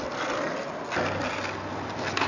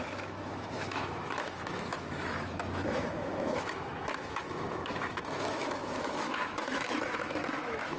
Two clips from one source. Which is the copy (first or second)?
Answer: second